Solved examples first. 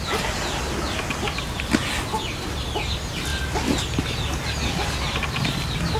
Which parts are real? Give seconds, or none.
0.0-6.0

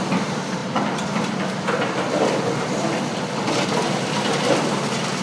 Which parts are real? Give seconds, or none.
0.0-5.2

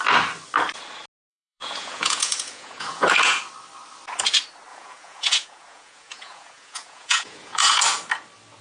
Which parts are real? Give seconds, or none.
0.0-1.3; 3.4-4.7; 7.8-8.6

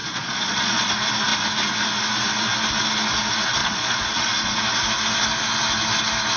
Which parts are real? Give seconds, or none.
0.9-3.6; 4.6-6.4

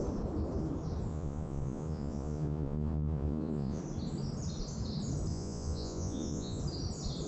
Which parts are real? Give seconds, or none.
0.0-1.1; 3.8-5.3; 6.6-7.3

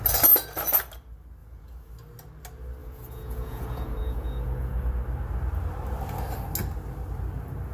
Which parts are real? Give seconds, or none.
0.0-1.4; 1.9-2.8; 4.9-7.7

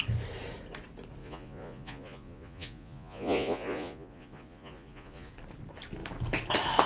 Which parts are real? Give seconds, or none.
0.0-1.2; 5.3-6.9